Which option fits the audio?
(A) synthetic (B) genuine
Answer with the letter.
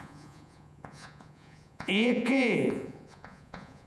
A